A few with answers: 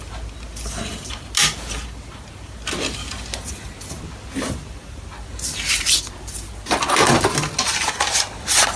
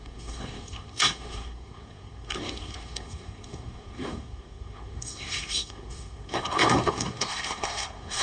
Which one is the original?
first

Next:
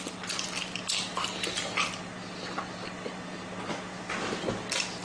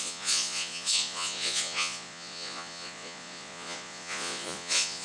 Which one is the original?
first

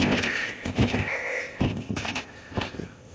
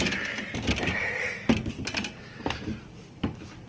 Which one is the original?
second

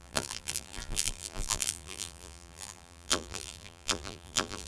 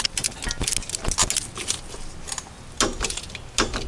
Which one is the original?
second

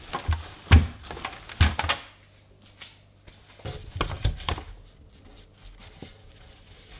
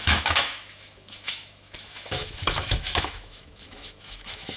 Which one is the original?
first